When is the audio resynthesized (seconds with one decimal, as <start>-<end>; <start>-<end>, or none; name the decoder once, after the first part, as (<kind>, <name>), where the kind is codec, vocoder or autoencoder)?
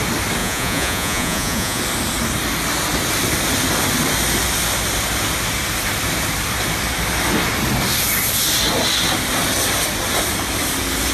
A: 0.4-1.8 (vocoder, Vocos)